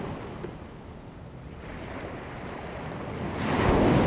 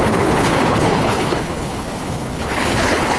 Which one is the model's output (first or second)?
second